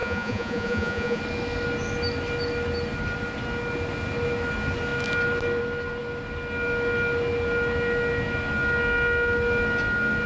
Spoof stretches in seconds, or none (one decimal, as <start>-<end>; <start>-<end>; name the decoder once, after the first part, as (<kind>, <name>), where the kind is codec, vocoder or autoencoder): 0.0-1.2 (vocoder, Vocos)